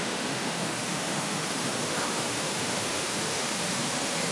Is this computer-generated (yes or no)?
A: yes